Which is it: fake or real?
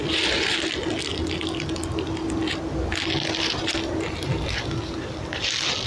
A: real